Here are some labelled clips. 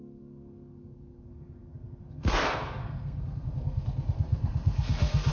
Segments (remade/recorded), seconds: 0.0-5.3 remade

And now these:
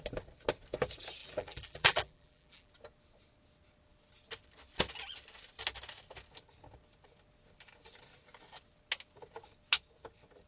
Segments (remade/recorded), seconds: 0.0-1.2 recorded; 1.2-2.7 remade; 2.7-10.5 recorded

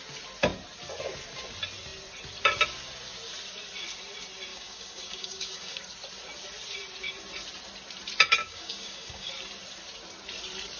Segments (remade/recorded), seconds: 0.0-4.5 recorded; 4.5-5.8 remade; 5.8-8.4 recorded; 8.4-9.3 remade; 9.3-10.8 recorded

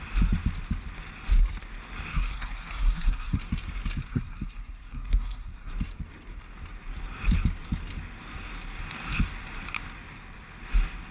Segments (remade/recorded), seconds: 0.0-2.1 recorded; 2.1-3.4 remade; 3.4-4.0 recorded; 4.0-5.7 remade; 5.7-11.1 recorded